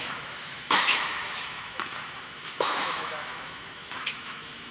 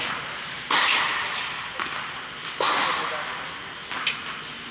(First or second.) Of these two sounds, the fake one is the first